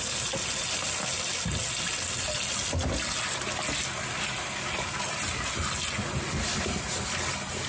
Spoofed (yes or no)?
no